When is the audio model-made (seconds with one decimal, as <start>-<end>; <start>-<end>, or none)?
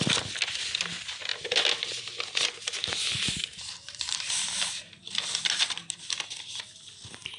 3.4-5.8